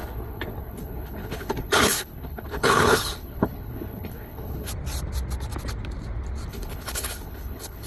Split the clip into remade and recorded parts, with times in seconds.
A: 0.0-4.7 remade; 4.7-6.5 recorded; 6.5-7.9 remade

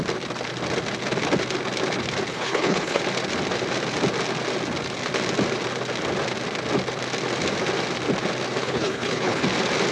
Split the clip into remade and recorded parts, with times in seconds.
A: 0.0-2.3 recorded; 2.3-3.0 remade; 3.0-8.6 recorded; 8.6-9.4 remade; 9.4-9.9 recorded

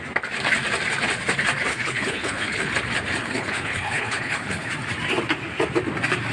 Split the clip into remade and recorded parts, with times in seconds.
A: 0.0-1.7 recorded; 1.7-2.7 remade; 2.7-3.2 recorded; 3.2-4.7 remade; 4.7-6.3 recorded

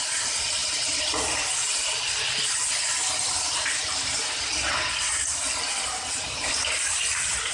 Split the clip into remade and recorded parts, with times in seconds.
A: 0.0-7.5 recorded

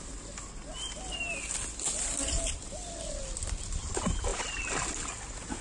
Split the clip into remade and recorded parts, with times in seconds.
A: 0.0-5.6 recorded